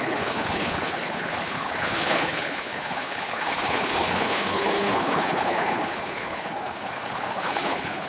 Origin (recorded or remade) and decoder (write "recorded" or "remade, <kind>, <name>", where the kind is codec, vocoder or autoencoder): remade, codec, HILCodec